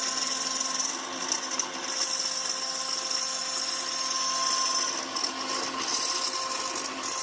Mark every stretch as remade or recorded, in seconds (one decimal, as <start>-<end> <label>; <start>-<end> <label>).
0.0-7.2 recorded